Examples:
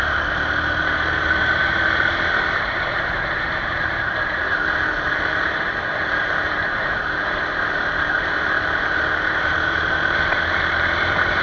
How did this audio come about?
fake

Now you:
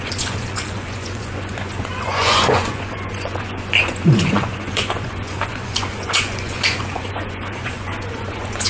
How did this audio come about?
fake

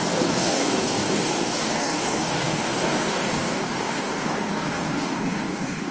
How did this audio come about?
fake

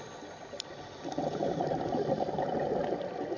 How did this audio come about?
real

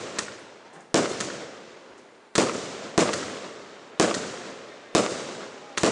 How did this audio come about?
real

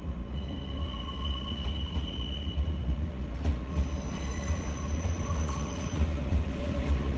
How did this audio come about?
fake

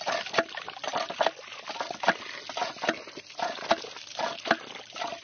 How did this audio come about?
real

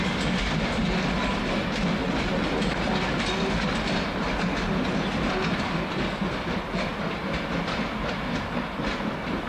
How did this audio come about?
real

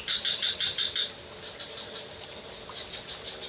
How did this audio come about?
real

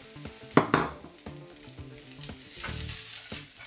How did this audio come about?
real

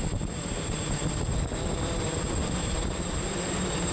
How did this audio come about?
fake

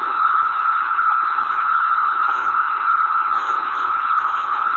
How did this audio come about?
fake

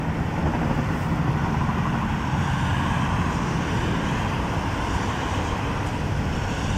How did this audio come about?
real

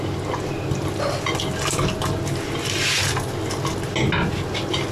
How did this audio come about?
real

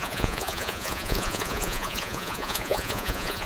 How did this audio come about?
fake